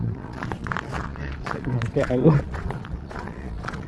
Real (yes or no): no